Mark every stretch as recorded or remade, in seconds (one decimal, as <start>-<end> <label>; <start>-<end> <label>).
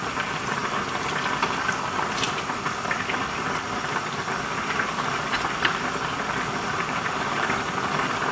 0.0-8.3 recorded